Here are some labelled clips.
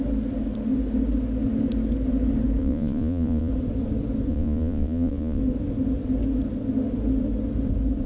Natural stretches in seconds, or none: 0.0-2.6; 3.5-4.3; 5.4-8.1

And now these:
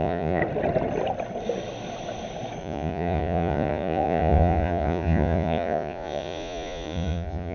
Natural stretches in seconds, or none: 0.4-2.6

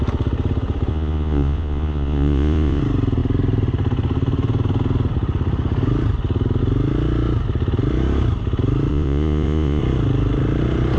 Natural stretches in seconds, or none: 0.0-0.9; 2.8-8.9; 9.8-11.0